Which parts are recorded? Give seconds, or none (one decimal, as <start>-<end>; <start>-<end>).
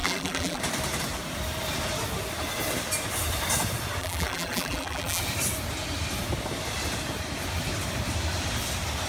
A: 0.6-4.0; 5.2-9.1